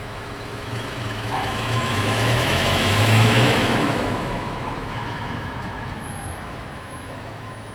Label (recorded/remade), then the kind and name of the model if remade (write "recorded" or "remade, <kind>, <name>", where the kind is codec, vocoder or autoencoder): remade, autoencoder, DAC-VAE